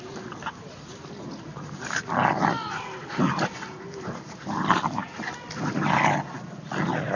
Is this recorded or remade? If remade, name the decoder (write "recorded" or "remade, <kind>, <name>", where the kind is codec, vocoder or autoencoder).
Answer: recorded